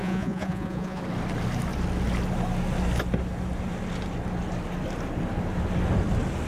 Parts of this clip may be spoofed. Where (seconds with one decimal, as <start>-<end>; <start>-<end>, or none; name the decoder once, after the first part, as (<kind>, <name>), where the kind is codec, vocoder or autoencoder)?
0.0-1.0 (vocoder, Vocos)